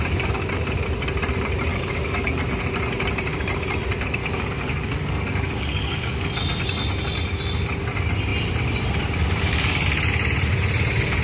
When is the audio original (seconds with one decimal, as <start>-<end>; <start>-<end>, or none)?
0.0-1.7; 2.4-4.2; 6.3-11.2